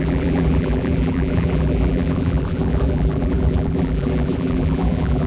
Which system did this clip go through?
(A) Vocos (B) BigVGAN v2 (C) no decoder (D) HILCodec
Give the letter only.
B